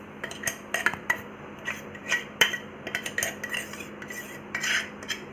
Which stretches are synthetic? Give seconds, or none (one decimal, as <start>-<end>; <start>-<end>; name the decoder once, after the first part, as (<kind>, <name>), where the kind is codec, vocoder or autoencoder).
none